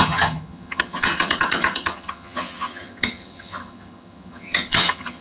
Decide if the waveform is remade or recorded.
remade